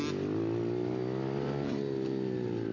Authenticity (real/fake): real